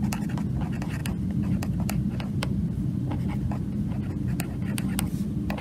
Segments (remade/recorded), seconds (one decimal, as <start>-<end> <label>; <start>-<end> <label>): 0.0-5.6 recorded